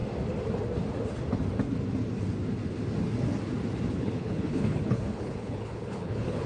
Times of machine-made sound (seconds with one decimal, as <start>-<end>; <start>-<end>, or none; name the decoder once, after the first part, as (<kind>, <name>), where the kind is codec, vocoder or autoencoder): 3.9-6.5 (codec, HILCodec)